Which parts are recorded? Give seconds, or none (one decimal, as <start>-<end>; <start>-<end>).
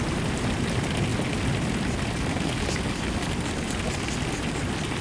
0.0-5.0